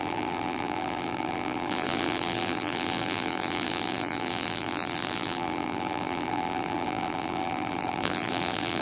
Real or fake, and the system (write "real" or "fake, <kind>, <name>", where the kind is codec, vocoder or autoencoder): fake, vocoder, BigVGAN v2